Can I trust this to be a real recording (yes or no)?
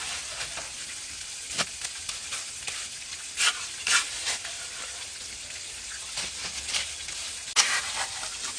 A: yes